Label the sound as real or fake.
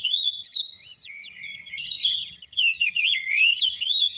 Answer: fake